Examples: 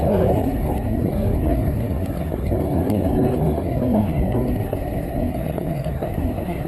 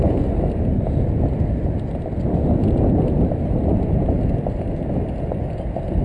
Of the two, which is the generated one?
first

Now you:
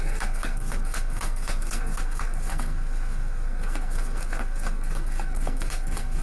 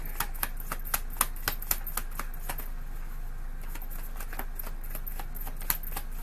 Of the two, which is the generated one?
first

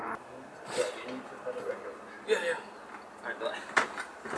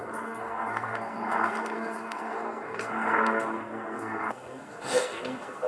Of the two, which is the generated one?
second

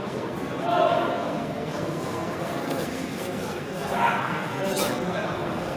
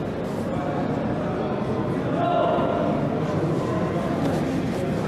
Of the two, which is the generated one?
first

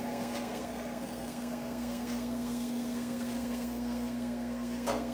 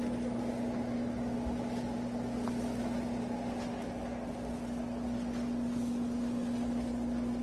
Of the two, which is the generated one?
first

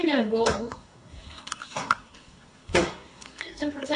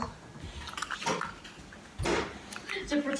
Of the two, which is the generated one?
first